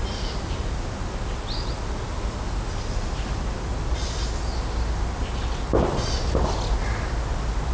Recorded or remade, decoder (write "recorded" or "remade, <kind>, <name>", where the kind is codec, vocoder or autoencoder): recorded